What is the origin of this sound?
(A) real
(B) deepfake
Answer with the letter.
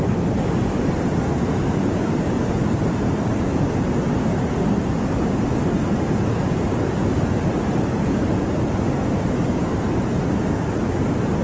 A